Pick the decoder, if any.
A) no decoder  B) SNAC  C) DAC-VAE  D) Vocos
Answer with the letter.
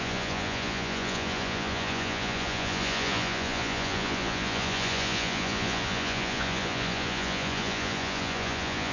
D